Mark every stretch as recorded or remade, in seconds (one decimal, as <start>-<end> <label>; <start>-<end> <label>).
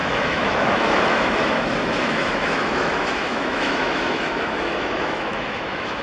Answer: 0.0-6.0 remade